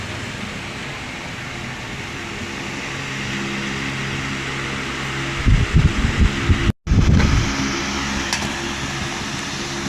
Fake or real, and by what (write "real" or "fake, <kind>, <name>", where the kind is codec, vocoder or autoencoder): real